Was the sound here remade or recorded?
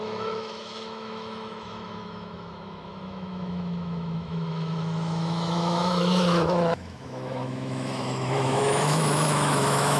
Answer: remade